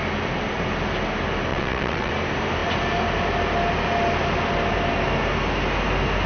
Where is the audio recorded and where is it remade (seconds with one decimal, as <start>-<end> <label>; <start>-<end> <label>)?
0.0-1.5 recorded; 1.5-2.1 remade; 2.1-6.3 recorded

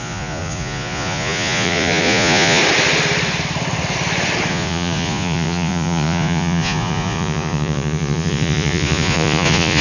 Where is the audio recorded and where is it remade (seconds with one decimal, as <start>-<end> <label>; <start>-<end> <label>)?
0.0-2.6 remade; 2.6-4.5 recorded; 4.5-9.8 remade

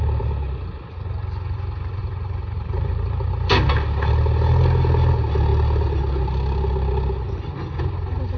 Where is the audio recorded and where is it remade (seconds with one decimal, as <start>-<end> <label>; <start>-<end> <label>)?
0.0-2.0 recorded; 2.0-3.3 remade; 3.3-8.4 recorded